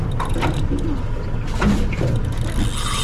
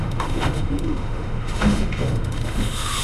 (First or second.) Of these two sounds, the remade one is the second